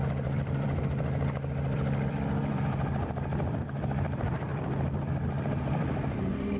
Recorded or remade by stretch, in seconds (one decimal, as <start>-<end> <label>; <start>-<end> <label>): 0.0-6.6 remade